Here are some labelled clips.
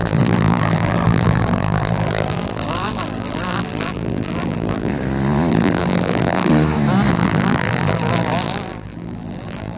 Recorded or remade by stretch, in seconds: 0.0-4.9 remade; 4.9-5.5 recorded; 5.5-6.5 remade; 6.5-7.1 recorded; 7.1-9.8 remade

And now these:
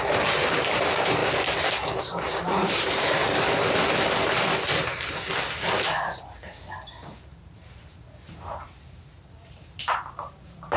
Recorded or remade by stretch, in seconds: 0.0-1.2 remade; 1.2-2.0 recorded; 2.0-3.2 remade; 3.2-6.7 recorded; 6.7-10.8 remade

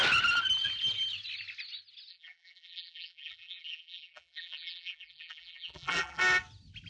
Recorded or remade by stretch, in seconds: 0.0-2.1 recorded; 2.1-6.2 remade; 6.2-6.9 recorded